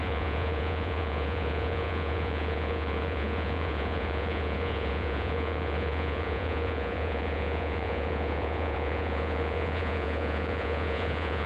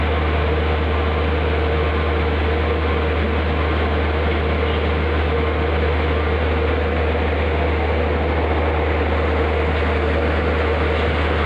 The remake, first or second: first